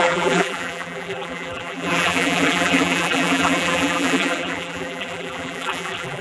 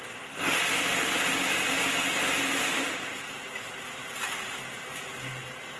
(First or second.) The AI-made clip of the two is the first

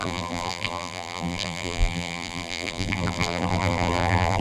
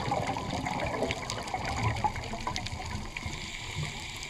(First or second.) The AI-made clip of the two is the first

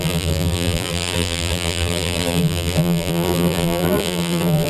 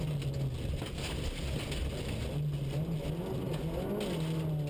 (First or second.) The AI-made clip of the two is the first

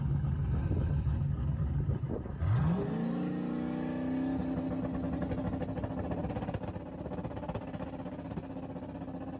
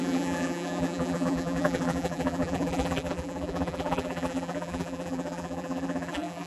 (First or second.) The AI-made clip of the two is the second